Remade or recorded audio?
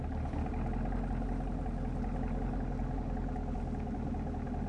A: recorded